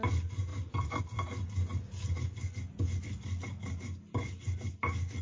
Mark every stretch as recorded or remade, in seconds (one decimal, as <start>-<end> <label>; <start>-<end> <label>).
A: 0.0-5.2 recorded